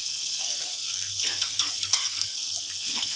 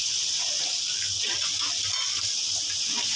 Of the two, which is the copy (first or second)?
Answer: first